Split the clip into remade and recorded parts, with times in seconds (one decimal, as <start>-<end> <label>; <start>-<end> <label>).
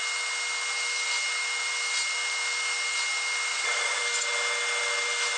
0.0-3.5 recorded; 3.5-4.0 remade; 4.0-5.4 recorded